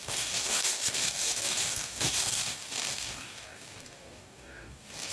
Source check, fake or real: fake